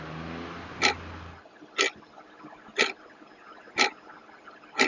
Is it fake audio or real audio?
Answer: real